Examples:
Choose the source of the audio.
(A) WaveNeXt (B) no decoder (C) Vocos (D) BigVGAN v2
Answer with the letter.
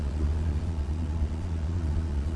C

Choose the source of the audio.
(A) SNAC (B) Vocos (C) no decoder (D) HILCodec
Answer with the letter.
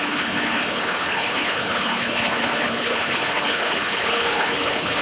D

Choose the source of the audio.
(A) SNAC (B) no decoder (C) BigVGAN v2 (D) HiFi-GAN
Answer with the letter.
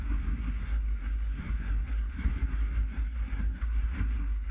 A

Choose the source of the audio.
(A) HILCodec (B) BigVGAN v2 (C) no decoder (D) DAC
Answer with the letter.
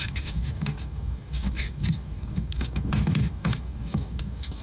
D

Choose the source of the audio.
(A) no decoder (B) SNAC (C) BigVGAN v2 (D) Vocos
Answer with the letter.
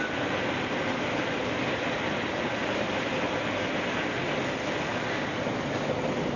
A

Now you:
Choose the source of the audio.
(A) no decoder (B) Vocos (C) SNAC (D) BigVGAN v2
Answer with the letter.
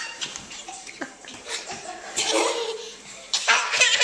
D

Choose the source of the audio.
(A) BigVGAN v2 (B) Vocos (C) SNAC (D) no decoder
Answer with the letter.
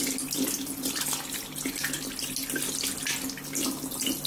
D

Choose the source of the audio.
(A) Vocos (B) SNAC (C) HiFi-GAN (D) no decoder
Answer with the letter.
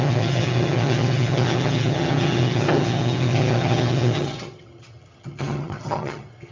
C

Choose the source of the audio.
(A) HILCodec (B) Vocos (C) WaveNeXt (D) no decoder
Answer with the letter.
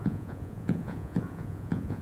B